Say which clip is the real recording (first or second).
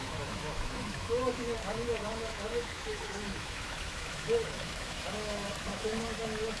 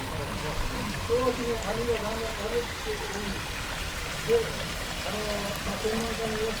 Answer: second